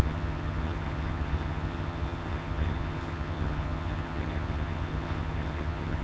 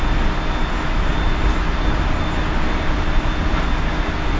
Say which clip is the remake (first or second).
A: first